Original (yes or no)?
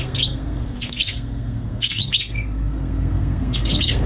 no